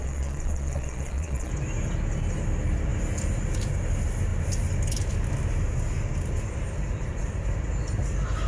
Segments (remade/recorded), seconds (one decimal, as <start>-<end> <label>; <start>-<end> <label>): 0.0-1.5 remade; 1.5-8.5 recorded